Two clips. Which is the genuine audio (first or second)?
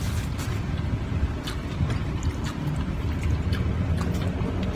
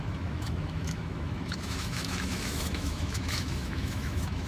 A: first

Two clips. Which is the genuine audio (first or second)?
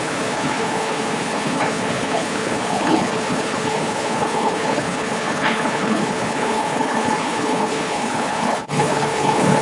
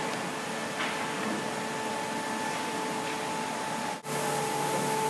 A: second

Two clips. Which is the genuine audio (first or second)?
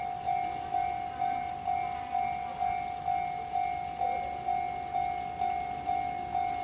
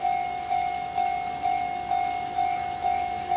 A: first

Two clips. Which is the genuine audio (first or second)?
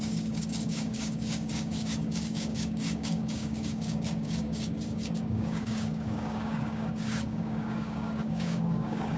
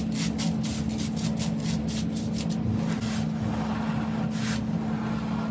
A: second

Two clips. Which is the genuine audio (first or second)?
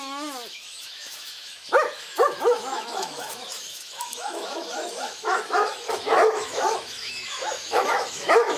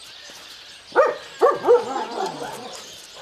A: second